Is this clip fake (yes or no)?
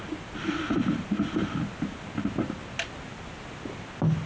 no